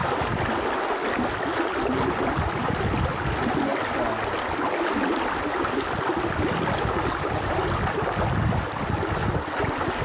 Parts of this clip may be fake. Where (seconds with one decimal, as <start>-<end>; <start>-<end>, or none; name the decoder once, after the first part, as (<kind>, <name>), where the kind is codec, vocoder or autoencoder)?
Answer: 0.0-0.6 (vocoder, BigVGAN v2)